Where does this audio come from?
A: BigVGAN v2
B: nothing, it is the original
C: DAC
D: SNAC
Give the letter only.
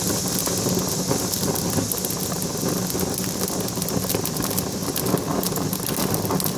B